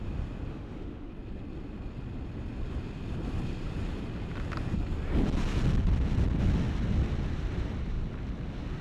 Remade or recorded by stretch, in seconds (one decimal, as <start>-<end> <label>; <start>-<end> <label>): 0.0-0.5 recorded; 0.5-1.1 remade; 1.1-8.8 recorded

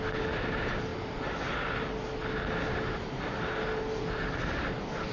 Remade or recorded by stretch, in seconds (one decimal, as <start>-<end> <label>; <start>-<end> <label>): 0.0-5.1 recorded